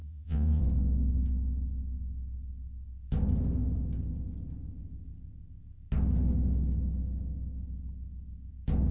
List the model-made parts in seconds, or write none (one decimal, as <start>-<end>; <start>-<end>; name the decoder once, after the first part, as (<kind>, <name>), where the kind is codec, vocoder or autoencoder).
0.0-0.6 (vocoder, WaveNeXt)